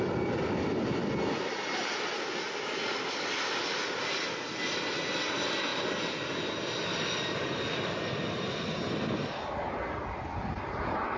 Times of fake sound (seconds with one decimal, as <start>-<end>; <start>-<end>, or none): none

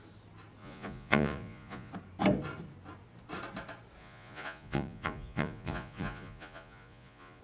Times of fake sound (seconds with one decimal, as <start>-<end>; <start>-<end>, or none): 0.6-1.9; 4.0-7.4

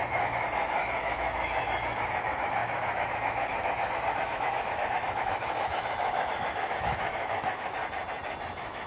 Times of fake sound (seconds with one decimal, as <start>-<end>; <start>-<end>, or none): 0.0-7.8; 8.4-8.9

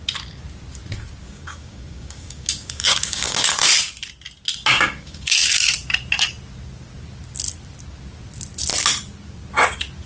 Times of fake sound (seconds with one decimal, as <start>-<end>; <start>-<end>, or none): 1.2-3.7; 4.7-5.7

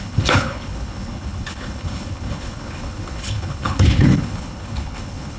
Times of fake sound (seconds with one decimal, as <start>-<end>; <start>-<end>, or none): 0.0-5.4

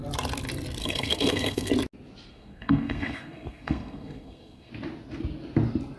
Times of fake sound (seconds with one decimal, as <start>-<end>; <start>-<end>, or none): 0.8-1.7; 2.3-4.7